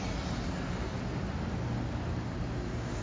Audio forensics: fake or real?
real